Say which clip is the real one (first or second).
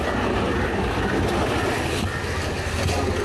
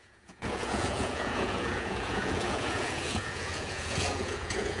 first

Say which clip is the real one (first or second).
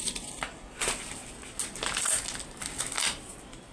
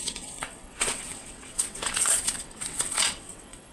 first